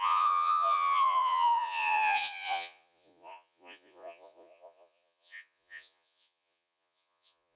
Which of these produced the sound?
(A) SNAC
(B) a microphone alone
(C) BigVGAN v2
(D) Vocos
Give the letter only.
D